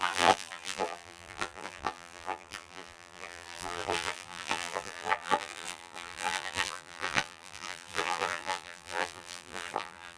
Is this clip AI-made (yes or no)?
yes